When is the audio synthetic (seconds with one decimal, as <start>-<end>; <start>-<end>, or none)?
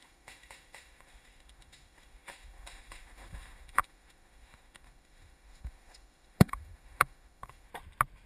0.0-7.7